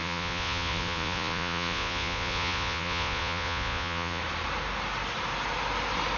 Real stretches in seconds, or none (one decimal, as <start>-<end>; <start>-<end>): 4.2-6.2